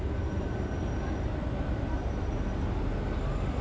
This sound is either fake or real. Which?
real